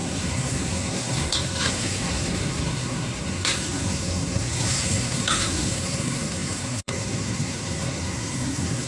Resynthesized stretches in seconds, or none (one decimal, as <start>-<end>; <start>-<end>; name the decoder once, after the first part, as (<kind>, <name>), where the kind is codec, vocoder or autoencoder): 0.0-8.9 (codec, SNAC)